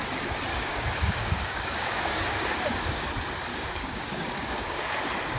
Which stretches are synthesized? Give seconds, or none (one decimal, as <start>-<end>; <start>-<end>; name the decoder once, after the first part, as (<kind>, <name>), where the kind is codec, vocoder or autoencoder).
0.5-3.1 (codec, DAC); 3.5-5.0